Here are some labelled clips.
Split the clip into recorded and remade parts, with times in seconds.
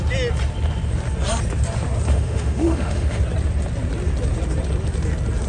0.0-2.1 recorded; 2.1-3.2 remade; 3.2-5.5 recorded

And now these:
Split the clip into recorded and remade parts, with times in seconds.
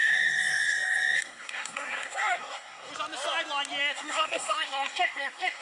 0.0-2.9 remade; 2.9-3.8 recorded; 3.8-5.6 remade